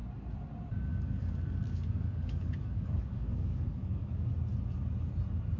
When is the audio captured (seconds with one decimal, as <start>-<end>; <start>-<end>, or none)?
0.0-0.9; 4.3-5.6

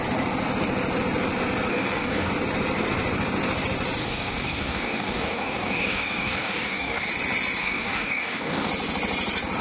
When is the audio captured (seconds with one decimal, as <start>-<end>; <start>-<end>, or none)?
0.0-1.7; 2.3-4.0; 7.1-7.6; 8.7-9.6

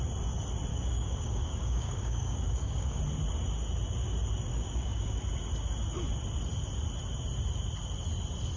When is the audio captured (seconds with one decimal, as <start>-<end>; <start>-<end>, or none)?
0.0-0.7; 3.0-4.5; 5.2-8.6